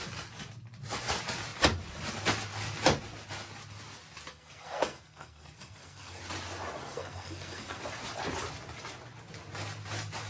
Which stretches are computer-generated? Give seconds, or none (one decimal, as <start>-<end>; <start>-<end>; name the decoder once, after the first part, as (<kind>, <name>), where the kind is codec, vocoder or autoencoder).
4.3-6.2 (codec, SNAC); 6.8-7.8